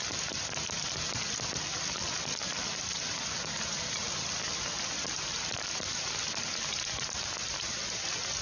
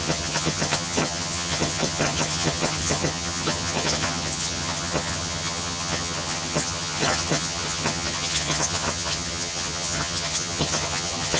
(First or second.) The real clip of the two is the first